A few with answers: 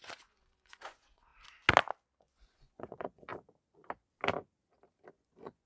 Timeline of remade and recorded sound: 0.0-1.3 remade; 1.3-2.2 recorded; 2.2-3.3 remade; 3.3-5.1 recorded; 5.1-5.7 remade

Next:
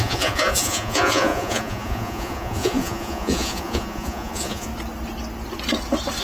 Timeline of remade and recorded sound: 0.0-4.7 remade; 4.7-6.2 recorded

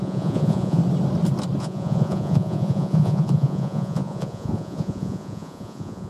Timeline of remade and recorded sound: 0.0-0.8 remade; 0.8-1.6 recorded; 1.6-6.1 remade

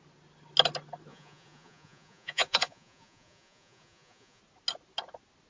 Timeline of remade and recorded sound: 0.0-1.1 recorded; 1.1-4.4 remade; 4.4-5.5 recorded